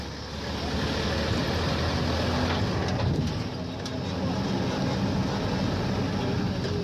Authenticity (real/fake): real